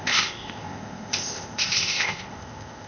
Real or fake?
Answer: fake